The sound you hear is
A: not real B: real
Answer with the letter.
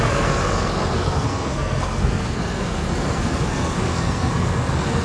A